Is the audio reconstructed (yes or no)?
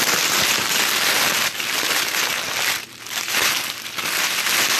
no